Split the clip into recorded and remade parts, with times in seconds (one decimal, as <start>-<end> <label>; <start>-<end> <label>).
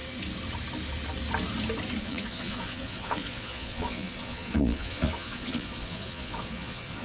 0.0-2.0 recorded; 2.0-7.0 remade